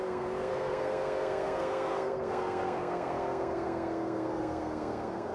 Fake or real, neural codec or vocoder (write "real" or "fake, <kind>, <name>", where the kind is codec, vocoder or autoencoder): fake, codec, SNAC